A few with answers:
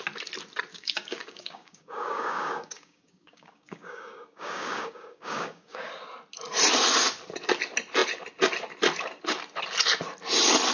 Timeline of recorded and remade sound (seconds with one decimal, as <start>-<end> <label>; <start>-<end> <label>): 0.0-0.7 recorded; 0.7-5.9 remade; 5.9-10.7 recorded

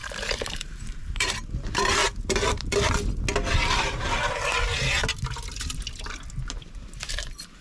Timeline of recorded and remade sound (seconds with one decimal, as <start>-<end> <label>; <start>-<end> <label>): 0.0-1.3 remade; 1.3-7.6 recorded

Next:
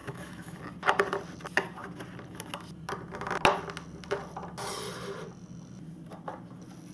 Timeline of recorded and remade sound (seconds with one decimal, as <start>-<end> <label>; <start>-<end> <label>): 0.0-0.6 remade; 0.6-6.9 recorded

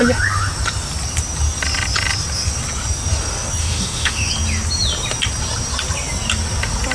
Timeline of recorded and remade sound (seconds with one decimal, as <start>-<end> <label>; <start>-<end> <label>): 0.0-3.6 recorded; 3.6-4.3 remade; 4.3-6.9 recorded

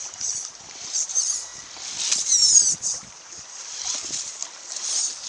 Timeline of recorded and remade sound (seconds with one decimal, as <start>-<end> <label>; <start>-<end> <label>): 0.0-1.5 remade; 1.5-2.2 recorded; 2.2-4.4 remade; 4.4-5.3 recorded